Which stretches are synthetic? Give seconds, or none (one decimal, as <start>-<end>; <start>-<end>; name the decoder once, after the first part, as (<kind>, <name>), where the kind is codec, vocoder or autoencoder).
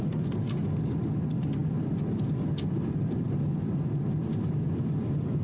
none